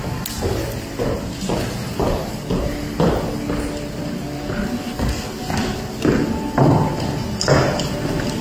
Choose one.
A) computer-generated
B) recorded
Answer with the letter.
B